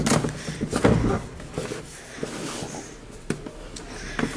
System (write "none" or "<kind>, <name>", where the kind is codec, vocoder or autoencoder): none